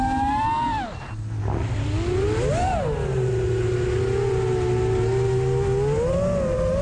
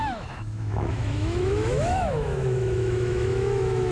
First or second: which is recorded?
first